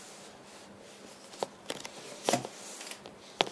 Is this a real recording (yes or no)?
yes